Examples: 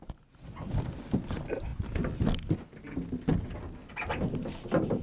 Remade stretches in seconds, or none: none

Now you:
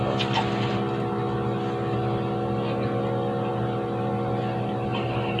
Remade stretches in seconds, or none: none

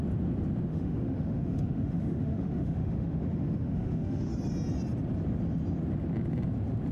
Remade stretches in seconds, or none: 0.7-4.3 (autoencoder, DAC-VAE)

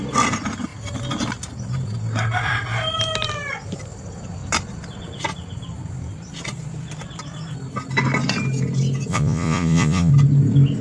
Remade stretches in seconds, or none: 9.1-10.1 (vocoder, Vocos)

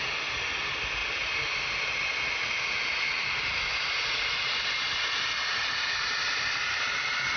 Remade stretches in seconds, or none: none